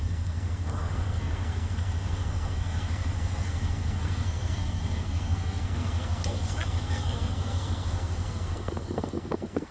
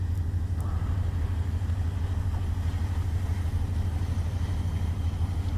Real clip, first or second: second